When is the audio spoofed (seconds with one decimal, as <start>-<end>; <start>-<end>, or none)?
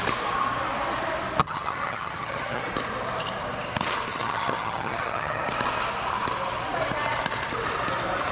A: 1.4-2.6; 4.1-5.4